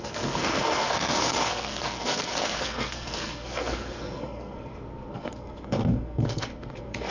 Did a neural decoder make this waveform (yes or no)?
yes